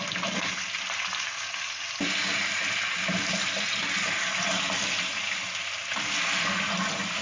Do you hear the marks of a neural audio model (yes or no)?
no